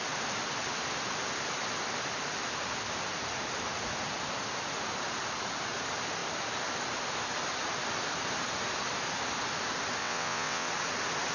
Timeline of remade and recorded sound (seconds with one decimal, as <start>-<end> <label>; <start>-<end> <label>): 0.0-10.0 recorded; 10.0-10.7 remade; 10.7-11.3 recorded